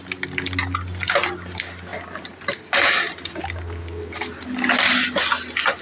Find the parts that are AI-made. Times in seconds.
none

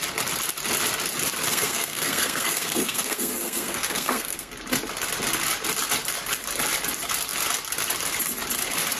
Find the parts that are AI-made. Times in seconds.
1.5-4.5 (codec, SNAC)

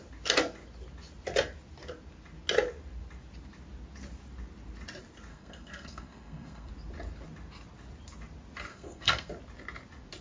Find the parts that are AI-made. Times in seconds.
5.3-6.7 (codec, SNAC); 8.7-9.3

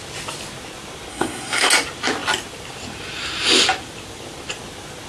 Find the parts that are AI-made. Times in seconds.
1.1-1.7 (codec, SNAC)